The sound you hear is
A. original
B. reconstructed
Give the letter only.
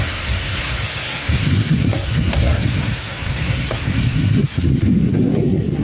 B